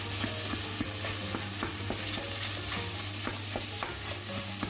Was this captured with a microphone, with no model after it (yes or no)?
yes